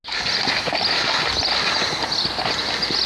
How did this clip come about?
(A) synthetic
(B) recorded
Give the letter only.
B